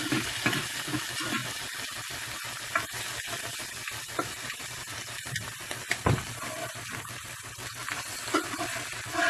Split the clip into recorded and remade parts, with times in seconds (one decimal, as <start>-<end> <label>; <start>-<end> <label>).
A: 0.0-9.3 recorded